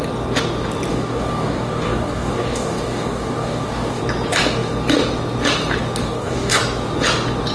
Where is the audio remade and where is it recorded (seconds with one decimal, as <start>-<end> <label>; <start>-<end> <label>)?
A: 0.0-0.9 recorded; 0.9-4.0 remade; 4.0-6.0 recorded; 6.0-6.6 remade; 6.6-7.5 recorded